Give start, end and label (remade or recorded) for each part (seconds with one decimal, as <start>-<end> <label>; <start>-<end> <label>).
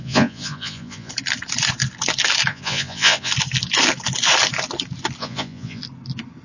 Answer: 0.0-1.1 remade; 1.1-2.5 recorded; 2.5-3.3 remade; 3.3-5.2 recorded; 5.2-5.8 remade; 5.8-6.4 recorded